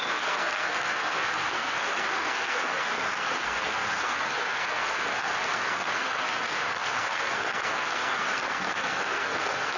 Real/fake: fake